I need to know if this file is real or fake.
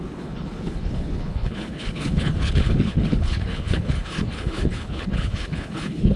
fake